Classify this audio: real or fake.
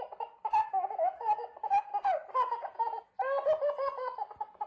real